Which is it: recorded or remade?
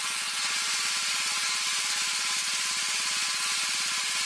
recorded